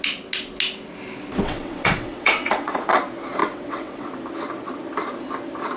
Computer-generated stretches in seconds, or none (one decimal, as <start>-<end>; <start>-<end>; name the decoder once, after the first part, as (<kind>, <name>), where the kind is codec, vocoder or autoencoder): 1.4-3.0 (vocoder, WaveNeXt); 3.4-4.1